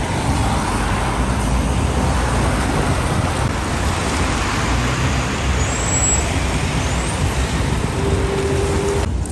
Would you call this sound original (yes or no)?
yes